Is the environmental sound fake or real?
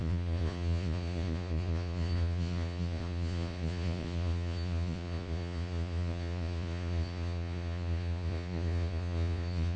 fake